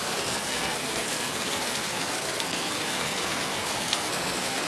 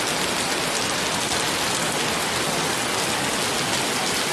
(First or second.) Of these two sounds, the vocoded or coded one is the first